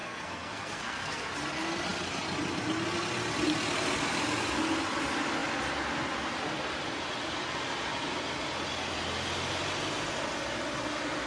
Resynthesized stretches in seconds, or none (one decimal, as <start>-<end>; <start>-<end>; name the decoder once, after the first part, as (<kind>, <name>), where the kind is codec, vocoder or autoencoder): 0.0-1.3 (codec, SNAC)